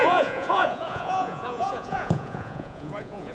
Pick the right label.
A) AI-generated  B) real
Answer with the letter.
A